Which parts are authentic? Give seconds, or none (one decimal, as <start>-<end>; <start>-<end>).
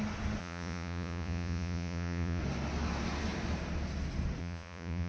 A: 0.0-0.4; 2.4-4.4